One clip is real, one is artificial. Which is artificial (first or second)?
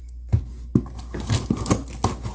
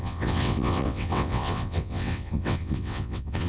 second